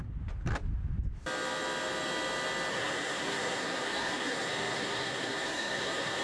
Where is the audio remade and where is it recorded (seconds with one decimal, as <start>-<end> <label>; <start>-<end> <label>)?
0.0-2.7 recorded; 2.7-6.2 remade